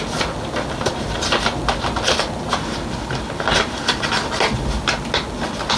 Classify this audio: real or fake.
real